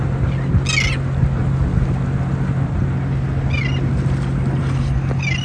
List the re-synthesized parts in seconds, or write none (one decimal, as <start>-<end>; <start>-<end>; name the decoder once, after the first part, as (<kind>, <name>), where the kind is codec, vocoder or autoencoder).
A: none